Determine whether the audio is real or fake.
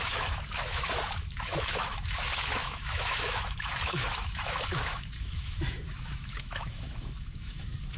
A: fake